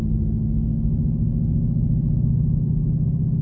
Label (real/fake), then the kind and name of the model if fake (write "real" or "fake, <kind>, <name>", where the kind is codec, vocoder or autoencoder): real